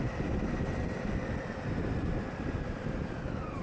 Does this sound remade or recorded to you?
recorded